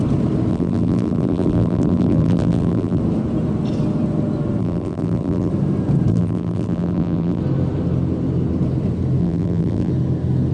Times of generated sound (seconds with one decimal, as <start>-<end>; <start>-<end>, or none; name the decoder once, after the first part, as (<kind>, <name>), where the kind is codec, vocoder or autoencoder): 0.5-3.0 (vocoder, BigVGAN v2); 4.6-5.5; 6.1-7.4; 9.2-9.9